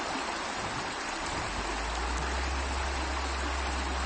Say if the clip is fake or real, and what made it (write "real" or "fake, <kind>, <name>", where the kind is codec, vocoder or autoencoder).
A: real